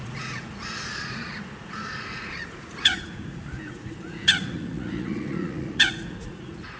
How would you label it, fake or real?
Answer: fake